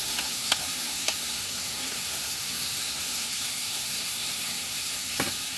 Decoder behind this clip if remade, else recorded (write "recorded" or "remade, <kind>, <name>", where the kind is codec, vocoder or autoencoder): remade, codec, SNAC